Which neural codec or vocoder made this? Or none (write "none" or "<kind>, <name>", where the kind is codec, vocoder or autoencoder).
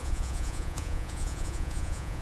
vocoder, Vocos